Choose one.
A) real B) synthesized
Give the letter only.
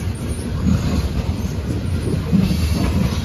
A